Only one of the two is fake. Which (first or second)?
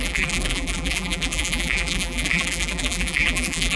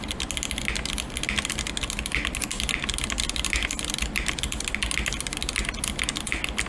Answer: first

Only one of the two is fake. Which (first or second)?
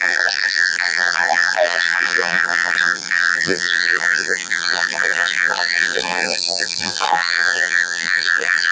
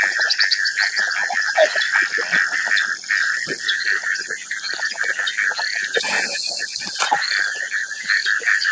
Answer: first